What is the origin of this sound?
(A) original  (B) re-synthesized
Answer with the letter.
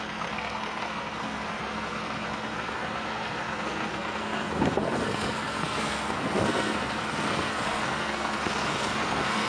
B